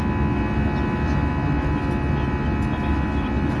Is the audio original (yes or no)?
yes